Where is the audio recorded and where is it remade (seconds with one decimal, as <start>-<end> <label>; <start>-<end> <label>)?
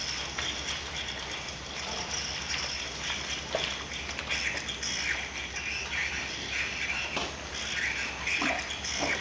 0.0-9.2 recorded